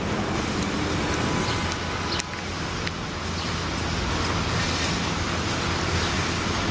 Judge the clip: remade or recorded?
recorded